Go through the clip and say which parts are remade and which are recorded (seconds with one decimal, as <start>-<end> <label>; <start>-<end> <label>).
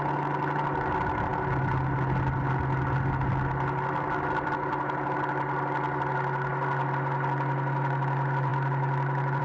0.0-9.4 recorded